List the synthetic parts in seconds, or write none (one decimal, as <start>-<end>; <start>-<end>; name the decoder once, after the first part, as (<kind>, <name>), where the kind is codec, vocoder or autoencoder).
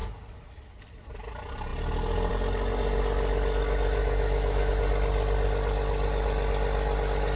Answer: 4.0-4.7 (autoencoder, DAC-VAE)